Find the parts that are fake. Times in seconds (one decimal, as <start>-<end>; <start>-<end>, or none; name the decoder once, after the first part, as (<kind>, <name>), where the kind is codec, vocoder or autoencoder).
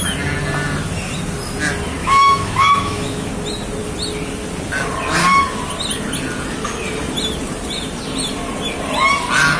2.0-3.3 (autoencoder, DAC-VAE)